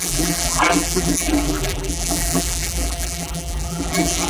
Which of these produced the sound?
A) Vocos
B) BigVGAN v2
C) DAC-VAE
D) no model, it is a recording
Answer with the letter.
B